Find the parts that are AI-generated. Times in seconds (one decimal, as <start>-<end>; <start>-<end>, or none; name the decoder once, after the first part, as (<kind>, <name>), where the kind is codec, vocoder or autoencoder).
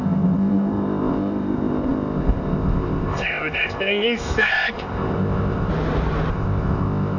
0.0-5.7 (codec, ZipCodec); 6.3-7.2